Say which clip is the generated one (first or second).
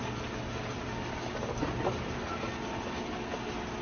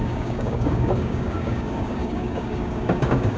second